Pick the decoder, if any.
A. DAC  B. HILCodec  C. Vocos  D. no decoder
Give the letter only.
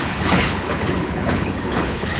B